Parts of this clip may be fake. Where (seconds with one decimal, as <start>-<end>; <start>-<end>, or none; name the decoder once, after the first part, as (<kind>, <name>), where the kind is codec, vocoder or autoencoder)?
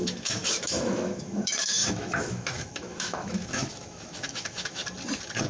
0.0-4.8 (autoencoder, DAC-VAE)